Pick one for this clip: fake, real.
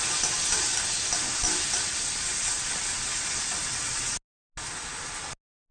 real